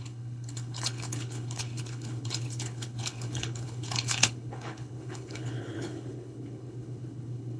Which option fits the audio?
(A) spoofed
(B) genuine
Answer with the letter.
A